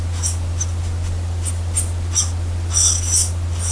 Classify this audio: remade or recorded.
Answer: recorded